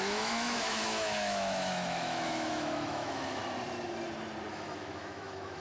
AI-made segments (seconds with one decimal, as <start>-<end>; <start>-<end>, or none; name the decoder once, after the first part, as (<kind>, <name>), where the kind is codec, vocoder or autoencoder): 0.0-3.4 (autoencoder, DAC-VAE); 4.5-5.6